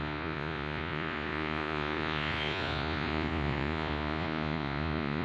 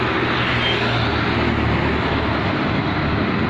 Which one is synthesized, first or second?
first